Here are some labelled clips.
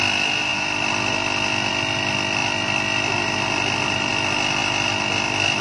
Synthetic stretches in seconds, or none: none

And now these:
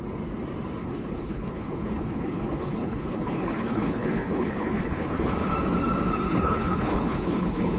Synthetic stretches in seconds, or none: 0.8-5.5; 6.3-7.8

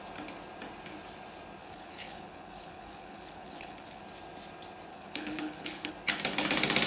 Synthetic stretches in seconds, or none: 1.6-4.0; 4.9-5.9